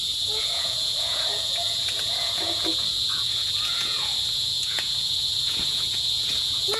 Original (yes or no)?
no